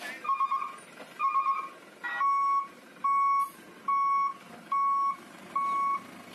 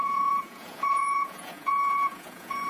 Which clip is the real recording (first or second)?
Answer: first